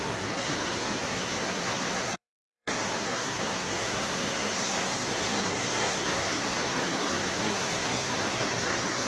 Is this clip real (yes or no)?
no